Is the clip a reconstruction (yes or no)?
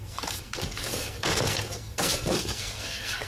yes